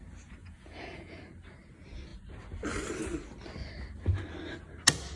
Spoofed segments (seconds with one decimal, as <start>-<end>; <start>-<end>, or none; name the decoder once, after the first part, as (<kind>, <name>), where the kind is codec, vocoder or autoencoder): 0.4-1.2 (vocoder, Vocos)